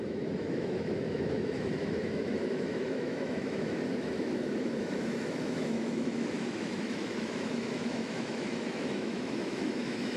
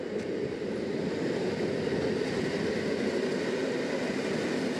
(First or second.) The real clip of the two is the second